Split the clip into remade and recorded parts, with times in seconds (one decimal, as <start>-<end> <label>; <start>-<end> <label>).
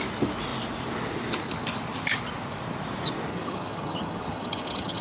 0.0-3.3 recorded; 3.3-5.0 remade